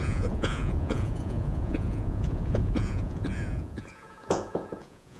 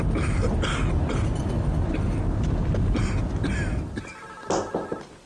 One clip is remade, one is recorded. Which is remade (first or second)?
first